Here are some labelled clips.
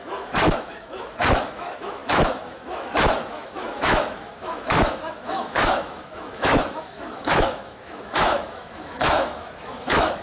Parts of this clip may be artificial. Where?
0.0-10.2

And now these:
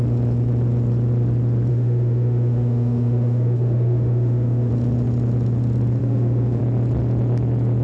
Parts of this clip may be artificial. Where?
1.7-4.7; 6.0-6.6

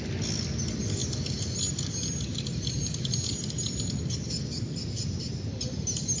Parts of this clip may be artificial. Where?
none

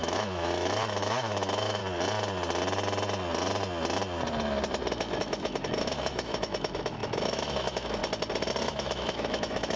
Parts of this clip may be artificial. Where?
0.0-1.8; 4.9-8.0; 8.6-9.8